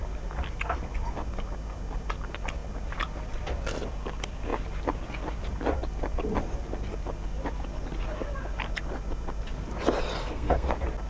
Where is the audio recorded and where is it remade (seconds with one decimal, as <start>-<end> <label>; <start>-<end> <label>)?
0.0-10.2 recorded; 10.2-10.7 remade; 10.7-11.1 recorded